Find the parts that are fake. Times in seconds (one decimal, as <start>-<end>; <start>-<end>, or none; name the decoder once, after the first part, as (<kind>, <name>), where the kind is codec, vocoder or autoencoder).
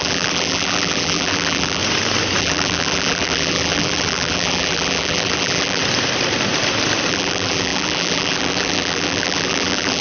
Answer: 0.0-1.8 (vocoder, BigVGAN v2); 2.4-5.8; 7.1-10.0